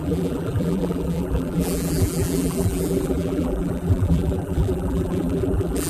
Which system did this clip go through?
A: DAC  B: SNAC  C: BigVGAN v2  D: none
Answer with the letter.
C